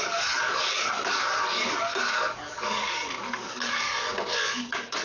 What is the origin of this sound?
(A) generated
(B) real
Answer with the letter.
A